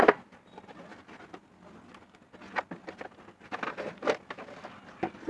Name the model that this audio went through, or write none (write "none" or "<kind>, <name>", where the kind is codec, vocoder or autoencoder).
none